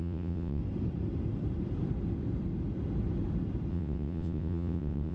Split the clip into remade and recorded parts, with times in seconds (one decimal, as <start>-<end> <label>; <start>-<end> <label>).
0.0-0.6 remade; 0.6-3.7 recorded; 3.7-5.1 remade